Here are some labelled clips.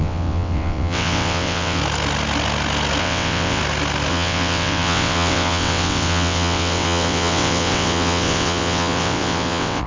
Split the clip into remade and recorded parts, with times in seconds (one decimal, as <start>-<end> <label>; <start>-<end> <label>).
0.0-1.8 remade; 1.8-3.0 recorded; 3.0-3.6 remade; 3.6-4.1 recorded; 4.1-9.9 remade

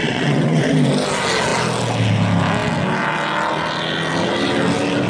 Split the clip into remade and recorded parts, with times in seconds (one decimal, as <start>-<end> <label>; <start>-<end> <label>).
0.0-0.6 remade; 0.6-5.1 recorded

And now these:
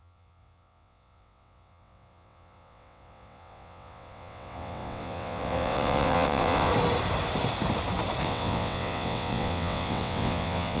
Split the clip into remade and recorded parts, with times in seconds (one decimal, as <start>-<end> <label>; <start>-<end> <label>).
0.0-6.7 remade; 6.7-8.2 recorded; 8.2-10.8 remade